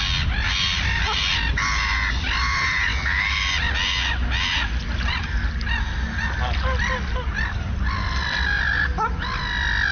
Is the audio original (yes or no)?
yes